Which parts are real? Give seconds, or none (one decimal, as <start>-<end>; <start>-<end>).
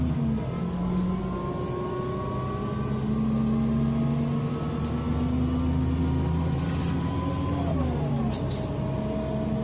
0.0-0.6; 1.2-9.6